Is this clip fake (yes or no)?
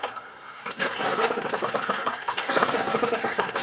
yes